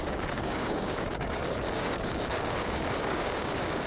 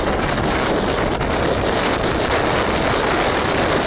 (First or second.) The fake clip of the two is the first